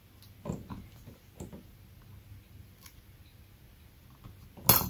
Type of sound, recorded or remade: recorded